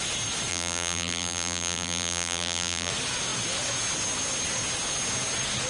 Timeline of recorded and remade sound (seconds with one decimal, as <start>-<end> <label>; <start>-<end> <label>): 0.0-0.5 recorded; 0.5-2.9 remade; 2.9-5.7 recorded